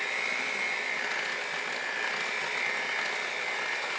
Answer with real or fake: real